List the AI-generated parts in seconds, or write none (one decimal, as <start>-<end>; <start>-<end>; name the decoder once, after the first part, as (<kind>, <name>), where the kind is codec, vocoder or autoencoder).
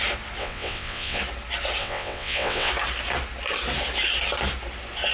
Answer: 0.4-1.2 (vocoder, WaveNeXt); 1.8-2.7